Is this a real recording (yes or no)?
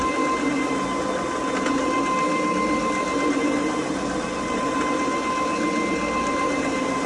yes